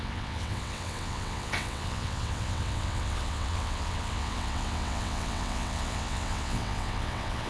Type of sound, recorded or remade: remade